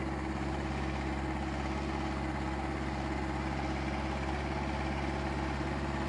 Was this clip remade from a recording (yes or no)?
no